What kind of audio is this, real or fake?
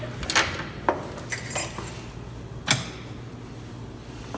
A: real